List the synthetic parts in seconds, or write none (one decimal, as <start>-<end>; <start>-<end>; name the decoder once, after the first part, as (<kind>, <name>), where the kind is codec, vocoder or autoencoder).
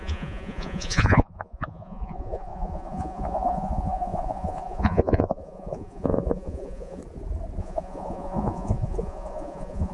0.0-7.0 (vocoder, Vocos); 7.6-9.9